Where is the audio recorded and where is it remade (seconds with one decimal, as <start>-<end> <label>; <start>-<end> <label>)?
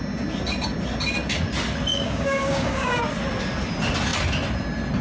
0.0-1.9 recorded; 1.9-3.0 remade; 3.0-5.0 recorded